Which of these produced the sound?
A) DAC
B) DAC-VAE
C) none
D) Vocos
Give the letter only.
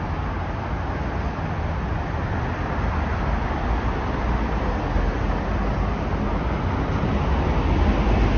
C